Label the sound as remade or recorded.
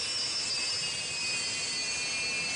recorded